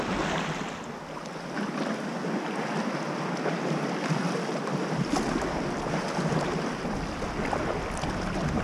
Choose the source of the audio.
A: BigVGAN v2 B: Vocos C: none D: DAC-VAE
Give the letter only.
C